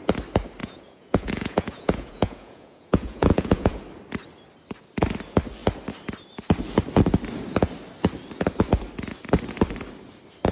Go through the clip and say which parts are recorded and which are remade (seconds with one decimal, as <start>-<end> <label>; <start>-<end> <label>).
0.0-0.6 recorded; 0.6-3.8 remade; 3.8-10.5 recorded

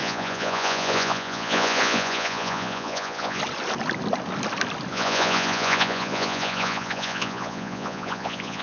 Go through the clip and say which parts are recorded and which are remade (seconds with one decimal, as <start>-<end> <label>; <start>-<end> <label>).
0.0-3.4 remade; 3.4-4.9 recorded; 4.9-8.6 remade

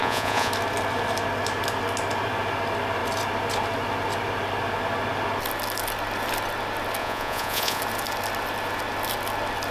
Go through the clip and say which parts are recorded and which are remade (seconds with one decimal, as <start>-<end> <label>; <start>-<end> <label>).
0.0-0.5 remade; 0.5-7.0 recorded; 7.0-7.8 remade; 7.8-9.7 recorded

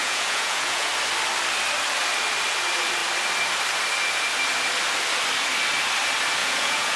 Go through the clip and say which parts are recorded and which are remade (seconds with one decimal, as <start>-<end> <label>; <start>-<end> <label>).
0.0-0.9 remade; 0.9-6.4 recorded; 6.4-7.0 remade

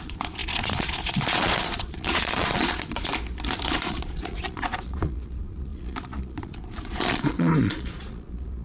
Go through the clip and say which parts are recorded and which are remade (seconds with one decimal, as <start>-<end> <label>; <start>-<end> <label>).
0.0-3.1 remade; 3.1-3.7 recorded; 3.7-8.6 remade

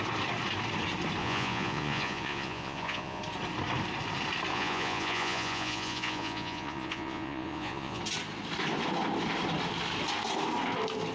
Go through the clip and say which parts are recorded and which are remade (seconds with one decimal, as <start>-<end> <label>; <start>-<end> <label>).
0.0-1.2 recorded; 1.2-3.2 remade; 3.2-4.5 recorded; 4.5-8.0 remade; 8.0-11.1 recorded

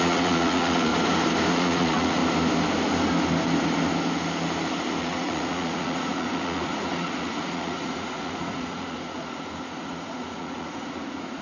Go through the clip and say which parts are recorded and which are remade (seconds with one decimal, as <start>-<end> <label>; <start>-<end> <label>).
0.0-0.9 remade; 0.9-1.5 recorded; 1.5-2.2 remade; 2.2-5.0 recorded; 5.0-11.4 remade

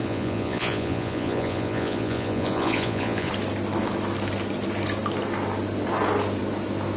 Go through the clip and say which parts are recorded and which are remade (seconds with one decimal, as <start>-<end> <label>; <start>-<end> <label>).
0.0-3.3 remade; 3.3-7.0 recorded